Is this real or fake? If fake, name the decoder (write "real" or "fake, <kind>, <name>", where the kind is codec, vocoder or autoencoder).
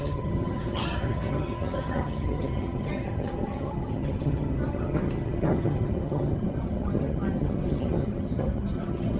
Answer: fake, vocoder, HiFi-GAN